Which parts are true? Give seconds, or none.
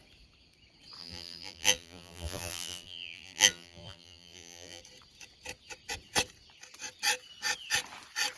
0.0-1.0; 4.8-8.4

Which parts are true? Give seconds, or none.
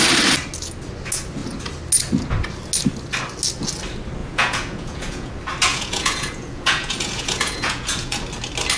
0.0-4.2; 5.3-5.7; 8.2-8.8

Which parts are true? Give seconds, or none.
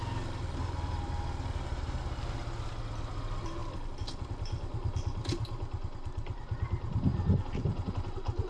0.0-8.5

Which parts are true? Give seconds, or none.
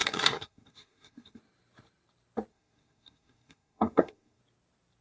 1.4-2.5; 4.4-5.0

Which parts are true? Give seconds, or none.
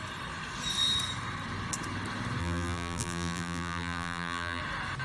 0.0-2.4; 4.6-5.0